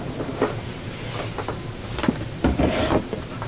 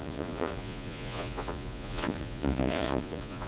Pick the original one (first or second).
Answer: first